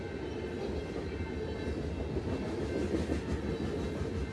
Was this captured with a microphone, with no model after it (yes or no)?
yes